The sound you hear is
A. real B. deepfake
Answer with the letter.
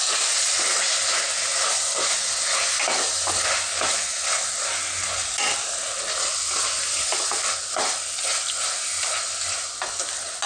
A